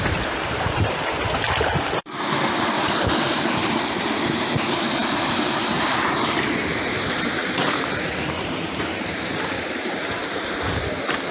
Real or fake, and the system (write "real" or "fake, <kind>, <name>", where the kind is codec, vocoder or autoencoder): fake, vocoder, BigVGAN v2